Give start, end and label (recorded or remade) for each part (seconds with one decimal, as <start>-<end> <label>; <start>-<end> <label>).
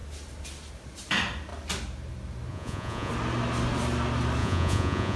0.0-2.5 recorded; 2.5-3.1 remade; 3.1-4.4 recorded; 4.4-5.2 remade